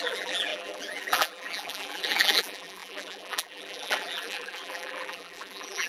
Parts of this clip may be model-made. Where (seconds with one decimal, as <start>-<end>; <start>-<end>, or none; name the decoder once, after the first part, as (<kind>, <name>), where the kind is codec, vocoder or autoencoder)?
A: 0.0-5.9 (vocoder, BigVGAN v2)